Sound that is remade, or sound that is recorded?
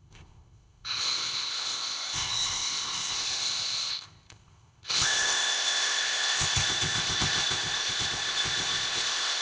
remade